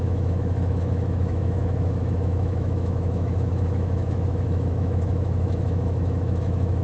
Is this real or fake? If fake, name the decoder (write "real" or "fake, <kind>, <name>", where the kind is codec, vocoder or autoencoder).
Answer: fake, autoencoder, DAC-VAE